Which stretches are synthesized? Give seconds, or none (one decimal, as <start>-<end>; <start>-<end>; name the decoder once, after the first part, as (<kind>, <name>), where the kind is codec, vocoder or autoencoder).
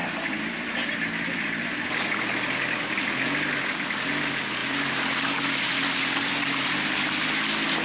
0.0-1.9 (vocoder, BigVGAN v2)